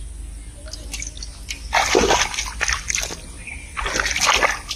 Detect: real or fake real